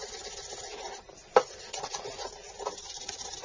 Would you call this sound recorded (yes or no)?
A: yes